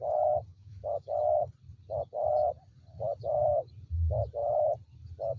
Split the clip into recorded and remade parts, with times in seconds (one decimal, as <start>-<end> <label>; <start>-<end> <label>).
0.0-0.5 recorded; 0.5-1.4 remade; 1.4-5.4 recorded